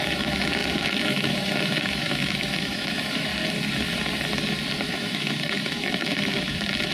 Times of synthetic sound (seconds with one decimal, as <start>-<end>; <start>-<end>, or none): 0.0-3.3; 4.9-6.9